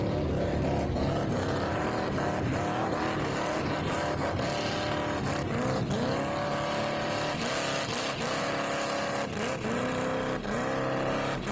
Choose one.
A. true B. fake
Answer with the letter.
A